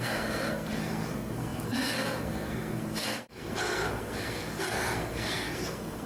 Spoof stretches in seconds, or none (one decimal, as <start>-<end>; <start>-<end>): 0.0-6.1